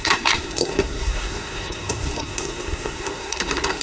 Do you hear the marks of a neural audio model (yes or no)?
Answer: yes